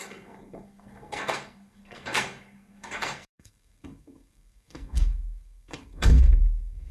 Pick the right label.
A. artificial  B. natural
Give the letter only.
A